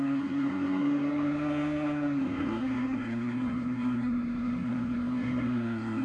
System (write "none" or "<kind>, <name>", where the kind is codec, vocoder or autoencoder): codec, SNAC